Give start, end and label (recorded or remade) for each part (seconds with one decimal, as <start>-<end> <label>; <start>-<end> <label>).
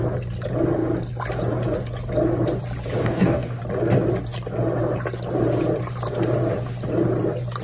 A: 0.0-3.0 recorded; 3.0-3.6 remade; 3.6-7.6 recorded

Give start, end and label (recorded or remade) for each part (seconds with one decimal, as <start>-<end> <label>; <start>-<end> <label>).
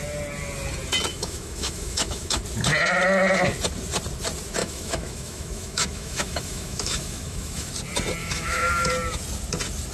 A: 0.0-1.1 recorded; 1.1-2.4 remade; 2.4-4.6 recorded; 4.6-7.7 remade; 7.7-8.2 recorded; 8.2-8.9 remade; 8.9-9.9 recorded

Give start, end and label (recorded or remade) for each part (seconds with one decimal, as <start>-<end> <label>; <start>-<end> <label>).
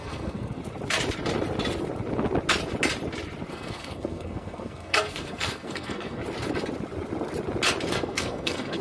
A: 0.0-0.6 remade; 0.6-3.5 recorded; 3.5-6.2 remade; 6.2-7.9 recorded; 7.9-8.8 remade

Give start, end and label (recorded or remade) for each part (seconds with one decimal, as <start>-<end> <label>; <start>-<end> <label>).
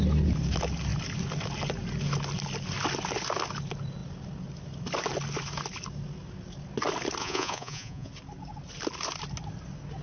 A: 0.0-7.2 recorded; 7.2-8.1 remade; 8.1-10.0 recorded